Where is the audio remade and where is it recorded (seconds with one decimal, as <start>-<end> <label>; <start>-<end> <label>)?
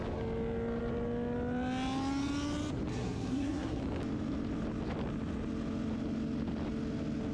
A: 0.0-2.9 recorded; 2.9-3.8 remade; 3.8-7.3 recorded